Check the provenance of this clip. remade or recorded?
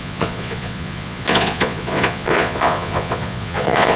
remade